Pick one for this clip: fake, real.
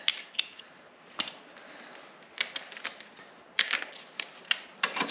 real